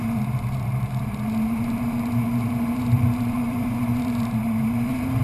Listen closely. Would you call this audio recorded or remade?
remade